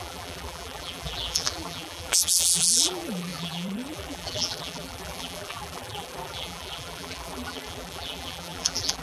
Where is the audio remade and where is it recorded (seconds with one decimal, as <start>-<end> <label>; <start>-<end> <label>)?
0.0-9.0 remade